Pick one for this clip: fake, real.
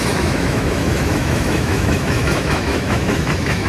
fake